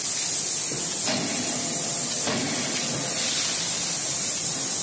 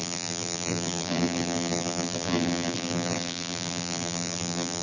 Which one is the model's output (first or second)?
second